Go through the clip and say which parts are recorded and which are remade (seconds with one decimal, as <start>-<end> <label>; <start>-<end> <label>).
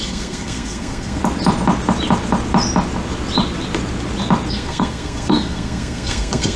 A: 0.0-1.2 remade; 1.2-4.5 recorded; 4.5-6.6 remade